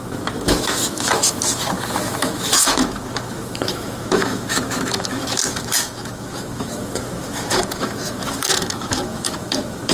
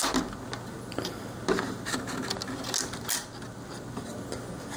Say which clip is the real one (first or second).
second